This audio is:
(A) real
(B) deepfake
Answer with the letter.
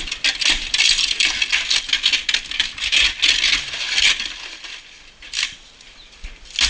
A